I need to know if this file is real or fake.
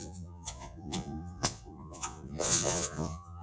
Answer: fake